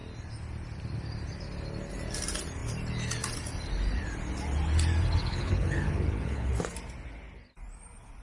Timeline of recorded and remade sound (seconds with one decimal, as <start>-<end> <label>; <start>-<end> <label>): 0.0-5.2 recorded; 5.2-6.5 remade; 6.5-8.2 recorded